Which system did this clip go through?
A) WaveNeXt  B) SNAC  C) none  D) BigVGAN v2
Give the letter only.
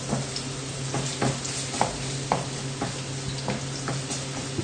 C